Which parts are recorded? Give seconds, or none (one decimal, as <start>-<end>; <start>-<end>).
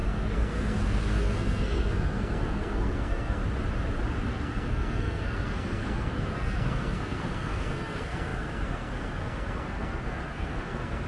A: 3.4-4.3